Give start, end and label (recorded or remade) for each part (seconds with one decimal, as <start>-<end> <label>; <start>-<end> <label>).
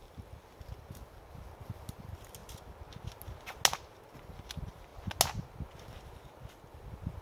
0.0-7.2 recorded